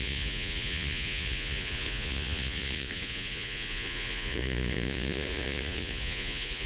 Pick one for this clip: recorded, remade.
remade